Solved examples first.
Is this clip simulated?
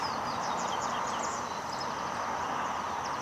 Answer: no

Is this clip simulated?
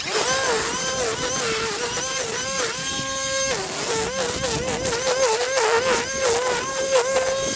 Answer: no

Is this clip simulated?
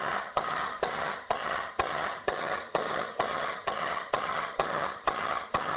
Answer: yes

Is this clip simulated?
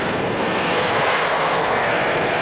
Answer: yes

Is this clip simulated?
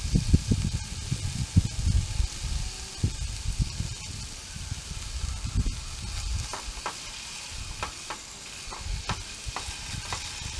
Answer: no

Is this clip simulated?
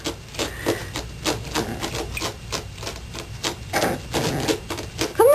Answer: no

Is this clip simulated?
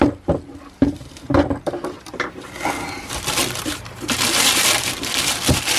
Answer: no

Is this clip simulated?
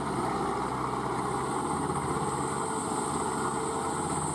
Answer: no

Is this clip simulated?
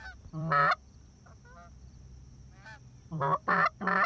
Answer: yes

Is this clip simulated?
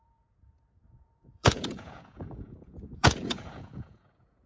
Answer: yes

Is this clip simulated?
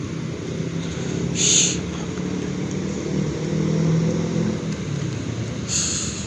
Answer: no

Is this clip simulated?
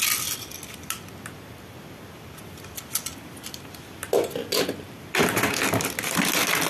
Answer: no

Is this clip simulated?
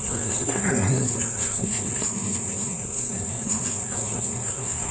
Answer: yes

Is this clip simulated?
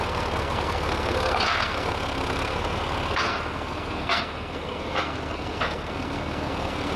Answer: yes